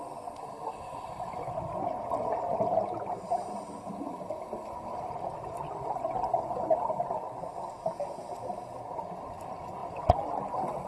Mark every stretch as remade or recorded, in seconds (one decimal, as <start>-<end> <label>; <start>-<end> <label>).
0.0-10.9 recorded